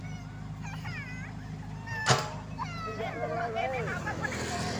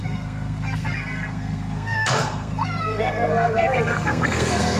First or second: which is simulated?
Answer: second